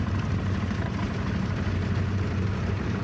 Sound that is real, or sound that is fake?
fake